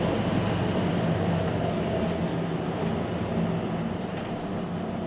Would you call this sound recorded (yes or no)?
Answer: yes